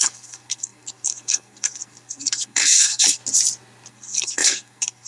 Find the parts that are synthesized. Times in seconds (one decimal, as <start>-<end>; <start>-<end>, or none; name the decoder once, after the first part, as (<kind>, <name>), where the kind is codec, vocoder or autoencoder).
0.0-3.2 (codec, SNAC); 3.9-5.1